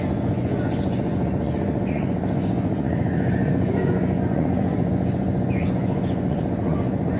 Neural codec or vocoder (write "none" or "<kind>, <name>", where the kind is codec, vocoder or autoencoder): vocoder, Vocos